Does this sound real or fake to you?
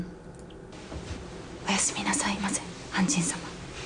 real